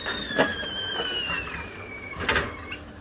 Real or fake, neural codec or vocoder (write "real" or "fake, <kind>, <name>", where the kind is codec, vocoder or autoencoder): real